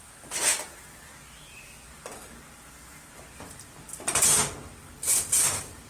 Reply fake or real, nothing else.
real